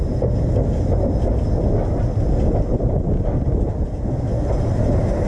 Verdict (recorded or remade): recorded